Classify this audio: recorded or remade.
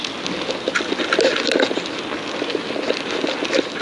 recorded